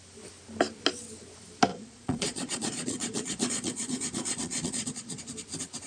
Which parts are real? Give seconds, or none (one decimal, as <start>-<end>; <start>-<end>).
0.0-1.7; 5.2-5.9